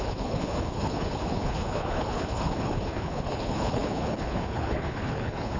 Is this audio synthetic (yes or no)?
yes